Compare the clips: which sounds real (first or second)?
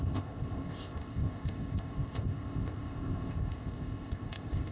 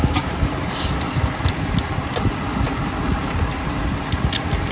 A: second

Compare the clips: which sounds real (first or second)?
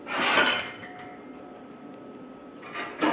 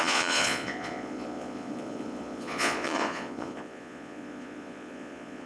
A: first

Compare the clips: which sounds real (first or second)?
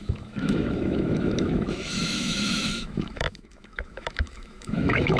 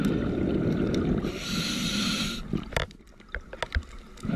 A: second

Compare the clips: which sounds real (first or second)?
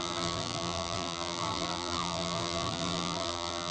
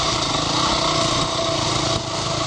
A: second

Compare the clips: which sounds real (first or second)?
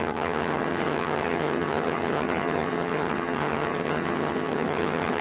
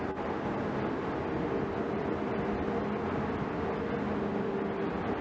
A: second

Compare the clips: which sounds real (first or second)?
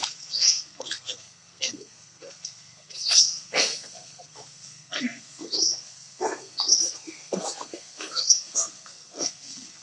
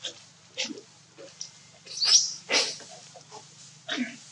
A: second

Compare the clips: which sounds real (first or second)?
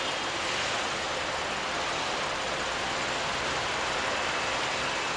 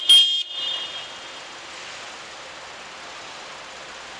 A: second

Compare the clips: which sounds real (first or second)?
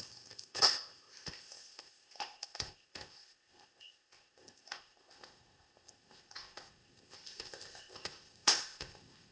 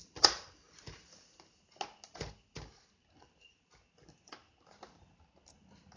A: second